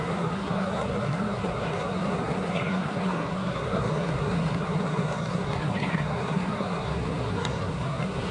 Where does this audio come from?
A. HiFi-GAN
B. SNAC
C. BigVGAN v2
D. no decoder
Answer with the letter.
B